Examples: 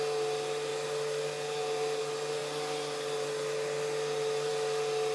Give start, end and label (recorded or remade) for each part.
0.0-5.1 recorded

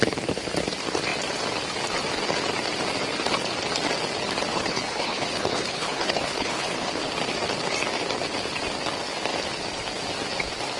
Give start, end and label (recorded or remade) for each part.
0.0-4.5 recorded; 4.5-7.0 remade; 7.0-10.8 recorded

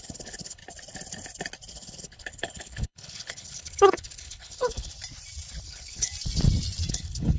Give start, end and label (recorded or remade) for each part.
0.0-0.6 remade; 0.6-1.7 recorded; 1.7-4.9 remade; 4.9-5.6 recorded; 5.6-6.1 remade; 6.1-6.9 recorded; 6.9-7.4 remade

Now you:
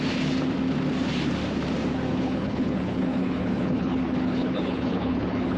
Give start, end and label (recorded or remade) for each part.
0.0-2.1 recorded; 2.1-5.6 remade

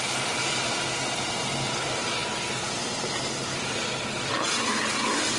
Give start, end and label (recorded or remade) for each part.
0.0-5.4 recorded